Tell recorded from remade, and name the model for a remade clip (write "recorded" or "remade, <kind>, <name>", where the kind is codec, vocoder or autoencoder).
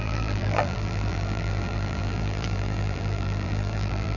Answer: remade, vocoder, BigVGAN v2